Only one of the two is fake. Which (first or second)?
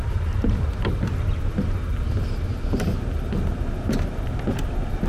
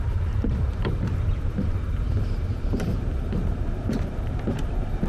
second